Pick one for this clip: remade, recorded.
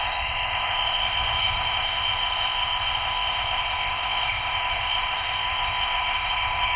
remade